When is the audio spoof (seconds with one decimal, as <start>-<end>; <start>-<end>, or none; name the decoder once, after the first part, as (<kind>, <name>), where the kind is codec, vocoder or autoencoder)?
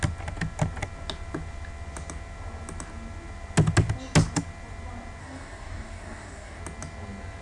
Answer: 5.2-6.6 (codec, DAC)